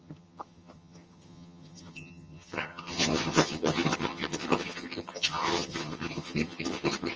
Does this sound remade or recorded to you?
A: remade